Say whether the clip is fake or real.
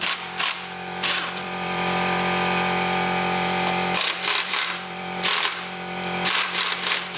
fake